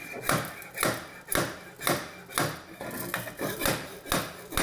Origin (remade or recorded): recorded